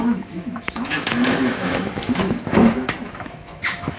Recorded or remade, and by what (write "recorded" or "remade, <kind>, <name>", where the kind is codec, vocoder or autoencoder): remade, autoencoder, DAC-VAE